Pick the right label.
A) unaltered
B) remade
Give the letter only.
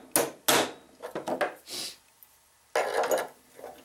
A